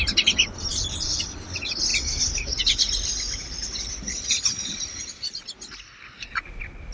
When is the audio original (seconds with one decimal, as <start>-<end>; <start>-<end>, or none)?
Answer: 0.0-0.7; 1.2-1.9; 2.6-3.4; 5.4-6.9